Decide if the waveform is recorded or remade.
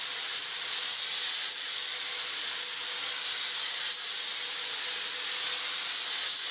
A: recorded